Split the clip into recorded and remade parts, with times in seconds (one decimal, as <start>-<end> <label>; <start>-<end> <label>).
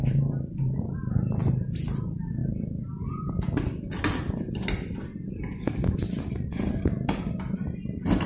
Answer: 0.0-5.1 recorded; 5.1-8.3 remade